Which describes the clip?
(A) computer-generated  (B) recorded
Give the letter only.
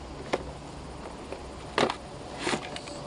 B